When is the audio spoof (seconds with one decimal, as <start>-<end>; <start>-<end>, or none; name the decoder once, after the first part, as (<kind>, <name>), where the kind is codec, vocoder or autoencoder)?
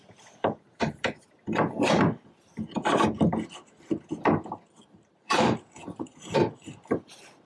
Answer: 0.0-2.8 (vocoder, BigVGAN v2); 4.6-7.5